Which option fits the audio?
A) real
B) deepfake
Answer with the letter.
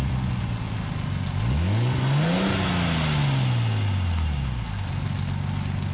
A